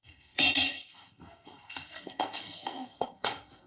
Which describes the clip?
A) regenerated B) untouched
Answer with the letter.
A